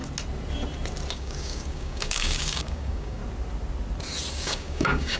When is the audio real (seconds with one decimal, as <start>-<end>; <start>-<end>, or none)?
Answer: 0.0-1.1; 3.2-4.3